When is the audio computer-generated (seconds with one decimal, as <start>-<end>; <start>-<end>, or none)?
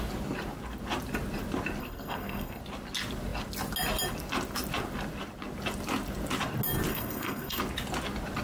1.8-2.6; 6.9-7.6